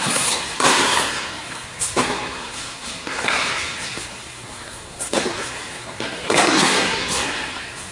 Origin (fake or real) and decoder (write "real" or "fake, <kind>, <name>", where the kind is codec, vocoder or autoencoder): fake, codec, SNAC